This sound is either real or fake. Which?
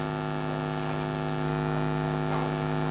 real